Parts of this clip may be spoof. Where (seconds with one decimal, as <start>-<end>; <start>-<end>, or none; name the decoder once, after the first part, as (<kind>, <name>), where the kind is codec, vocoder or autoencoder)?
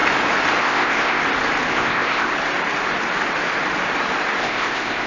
0.6-1.2 (codec, ZipCodec); 1.7-2.3; 4.4-5.1